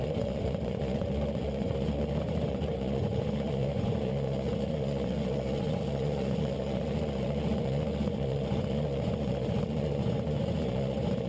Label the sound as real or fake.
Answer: fake